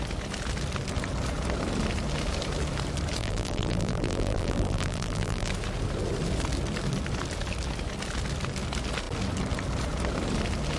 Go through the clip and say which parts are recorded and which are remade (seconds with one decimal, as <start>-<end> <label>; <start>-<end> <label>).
0.0-3.2 recorded; 3.2-5.5 remade; 5.5-10.8 recorded